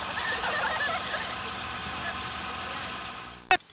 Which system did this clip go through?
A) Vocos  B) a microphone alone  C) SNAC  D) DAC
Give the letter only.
B